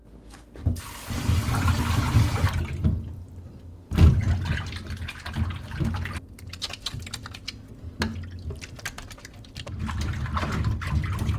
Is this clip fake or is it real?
real